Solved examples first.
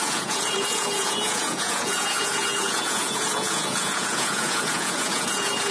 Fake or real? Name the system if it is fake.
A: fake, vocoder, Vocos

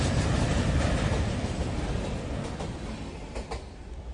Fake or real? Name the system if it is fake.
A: real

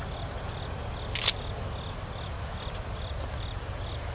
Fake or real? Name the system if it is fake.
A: real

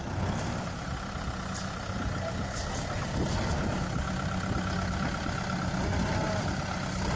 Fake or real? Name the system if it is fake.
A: real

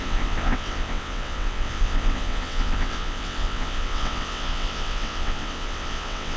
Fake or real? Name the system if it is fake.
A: fake, vocoder, WaveNeXt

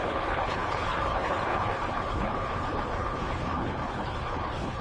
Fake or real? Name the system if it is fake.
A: fake, codec, HILCodec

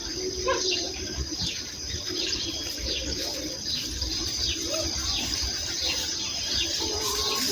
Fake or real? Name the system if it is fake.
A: fake, vocoder, BigVGAN v2